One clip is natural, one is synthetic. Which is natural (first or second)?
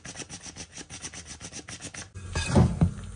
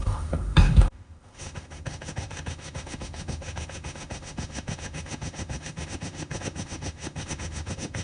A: first